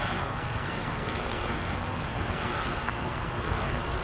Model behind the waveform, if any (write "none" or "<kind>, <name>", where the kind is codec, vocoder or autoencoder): codec, SNAC